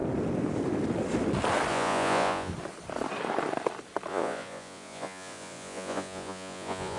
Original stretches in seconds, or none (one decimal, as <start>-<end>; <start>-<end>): 0.0-1.7; 2.5-4.1